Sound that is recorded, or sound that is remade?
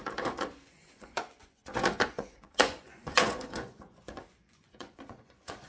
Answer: remade